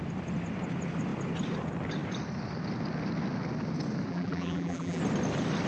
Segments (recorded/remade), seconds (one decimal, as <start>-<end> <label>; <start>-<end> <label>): 0.0-4.1 recorded; 4.1-5.0 remade; 5.0-5.7 recorded